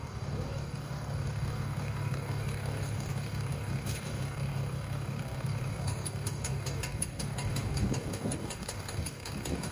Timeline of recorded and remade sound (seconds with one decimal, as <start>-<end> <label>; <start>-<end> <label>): 0.0-9.7 remade